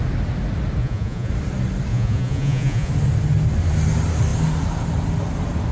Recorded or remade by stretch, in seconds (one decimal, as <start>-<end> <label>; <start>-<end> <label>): 0.0-0.8 recorded; 0.8-1.3 remade; 1.3-1.9 recorded; 1.9-2.9 remade; 2.9-5.7 recorded